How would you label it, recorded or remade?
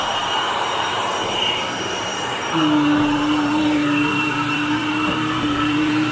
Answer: remade